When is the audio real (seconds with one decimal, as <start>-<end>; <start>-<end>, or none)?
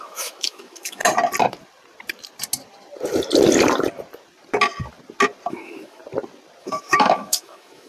1.0-5.5; 6.0-6.6